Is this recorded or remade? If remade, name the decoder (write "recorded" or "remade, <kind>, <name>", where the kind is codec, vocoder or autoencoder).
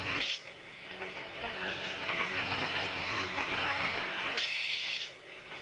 remade, codec, SNAC